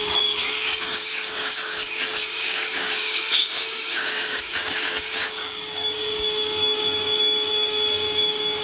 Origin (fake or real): fake